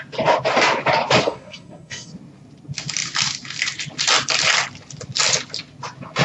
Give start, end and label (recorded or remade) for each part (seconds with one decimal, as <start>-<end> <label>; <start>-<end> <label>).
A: 0.0-1.2 recorded; 1.2-2.1 remade; 2.1-6.2 recorded